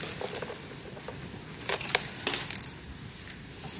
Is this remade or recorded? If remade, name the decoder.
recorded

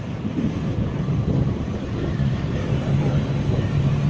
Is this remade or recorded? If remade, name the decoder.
remade, vocoder, BigVGAN v2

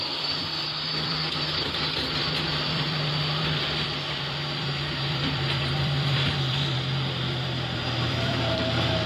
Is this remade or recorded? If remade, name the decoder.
remade, vocoder, BigVGAN v2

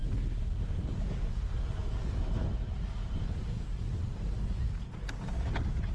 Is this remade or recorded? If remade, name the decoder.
recorded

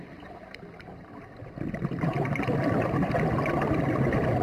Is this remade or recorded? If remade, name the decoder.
recorded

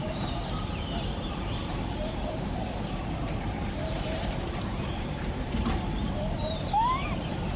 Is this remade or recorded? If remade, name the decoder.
remade, vocoder, BigVGAN v2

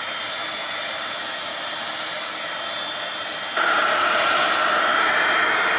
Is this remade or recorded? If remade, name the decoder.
remade, vocoder, BigVGAN v2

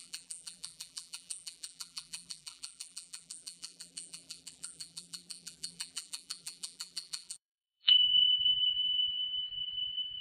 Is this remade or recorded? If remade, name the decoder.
remade, vocoder, BigVGAN v2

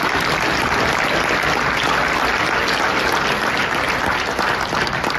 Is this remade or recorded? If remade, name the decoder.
recorded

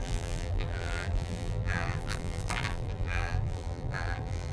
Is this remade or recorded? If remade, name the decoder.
remade, vocoder, BigVGAN v2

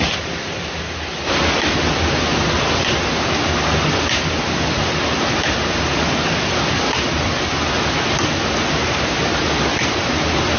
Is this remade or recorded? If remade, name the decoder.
recorded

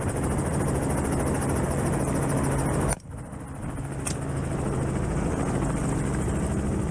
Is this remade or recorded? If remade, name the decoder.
recorded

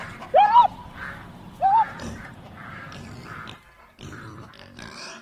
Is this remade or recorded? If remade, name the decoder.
remade, vocoder, BigVGAN v2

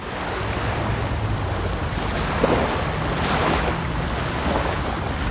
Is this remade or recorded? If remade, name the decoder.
recorded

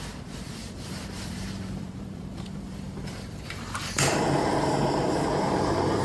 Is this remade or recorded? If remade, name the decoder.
remade, vocoder, BigVGAN v2